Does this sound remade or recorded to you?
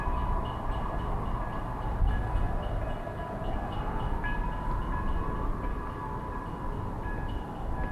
recorded